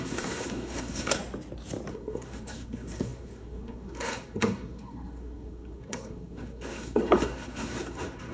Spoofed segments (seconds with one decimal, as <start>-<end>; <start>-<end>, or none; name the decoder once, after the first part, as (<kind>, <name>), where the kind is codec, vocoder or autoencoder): 0.0-1.2 (codec, SNAC); 1.9-8.3